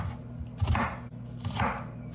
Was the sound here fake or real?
real